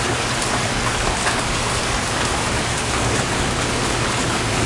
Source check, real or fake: fake